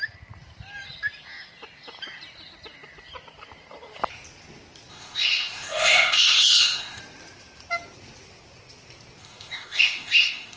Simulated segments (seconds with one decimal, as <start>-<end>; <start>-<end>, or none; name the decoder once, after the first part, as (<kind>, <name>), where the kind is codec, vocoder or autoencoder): 4.9-7.0 (codec, ZipCodec); 9.2-10.6